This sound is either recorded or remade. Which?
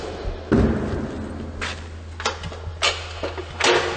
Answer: recorded